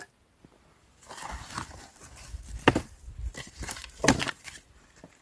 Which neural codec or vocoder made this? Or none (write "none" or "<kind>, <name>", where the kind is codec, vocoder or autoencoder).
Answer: none